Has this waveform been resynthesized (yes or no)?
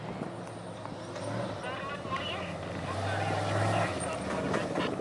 no